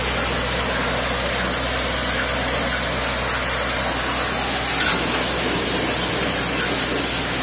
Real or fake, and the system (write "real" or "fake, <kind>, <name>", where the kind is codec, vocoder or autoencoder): real